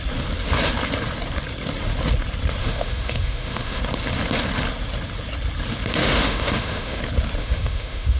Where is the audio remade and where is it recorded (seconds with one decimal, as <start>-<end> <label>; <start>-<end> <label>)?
0.0-2.6 recorded; 2.6-3.8 remade; 3.8-6.0 recorded; 6.0-7.0 remade; 7.0-7.4 recorded; 7.4-8.2 remade